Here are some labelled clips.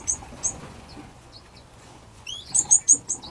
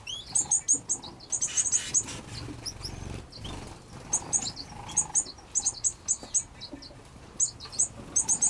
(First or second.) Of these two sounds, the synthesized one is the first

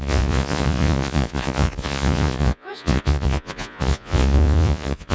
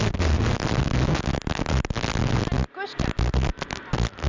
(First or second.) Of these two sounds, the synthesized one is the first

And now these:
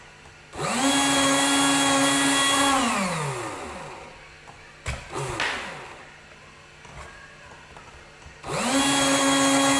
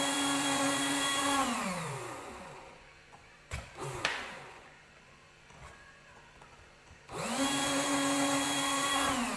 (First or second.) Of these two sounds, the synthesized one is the second